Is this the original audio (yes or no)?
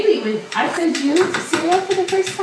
no